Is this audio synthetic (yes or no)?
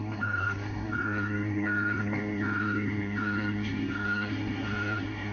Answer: yes